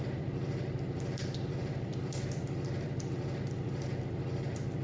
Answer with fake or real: fake